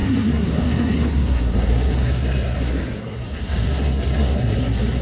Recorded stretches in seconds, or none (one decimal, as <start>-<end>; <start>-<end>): none